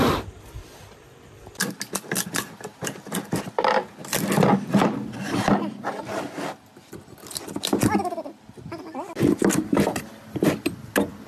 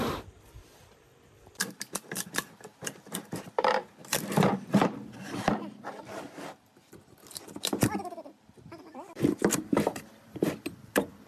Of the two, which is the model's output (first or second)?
second